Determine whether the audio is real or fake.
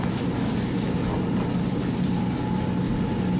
real